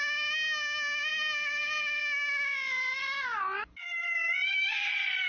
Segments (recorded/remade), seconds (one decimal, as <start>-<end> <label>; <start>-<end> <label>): 0.0-5.3 recorded